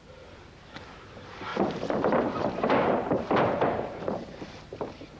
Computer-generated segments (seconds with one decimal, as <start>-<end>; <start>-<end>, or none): 1.5-4.6